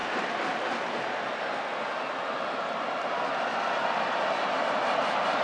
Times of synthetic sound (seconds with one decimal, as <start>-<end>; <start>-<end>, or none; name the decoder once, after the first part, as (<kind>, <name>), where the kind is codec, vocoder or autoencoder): none